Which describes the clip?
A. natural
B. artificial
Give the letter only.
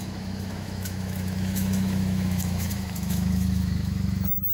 B